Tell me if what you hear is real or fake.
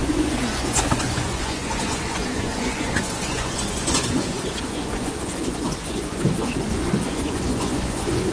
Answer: fake